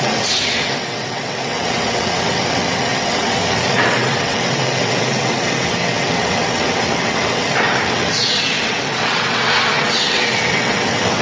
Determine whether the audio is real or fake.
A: fake